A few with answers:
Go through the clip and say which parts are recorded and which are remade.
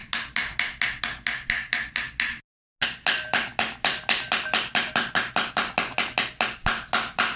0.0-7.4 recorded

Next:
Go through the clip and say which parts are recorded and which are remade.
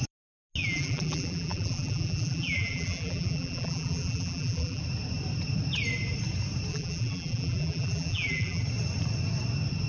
0.0-0.6 recorded; 0.6-4.8 remade; 4.8-6.7 recorded; 6.7-8.6 remade; 8.6-9.9 recorded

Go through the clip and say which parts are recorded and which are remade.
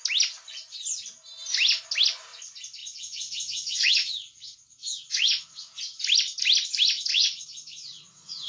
0.0-2.8 recorded; 2.8-5.8 remade; 5.8-7.1 recorded; 7.1-8.5 remade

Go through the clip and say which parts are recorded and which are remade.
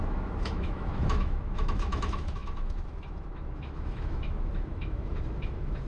0.0-5.9 remade